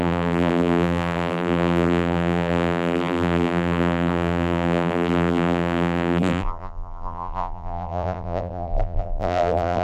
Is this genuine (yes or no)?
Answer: no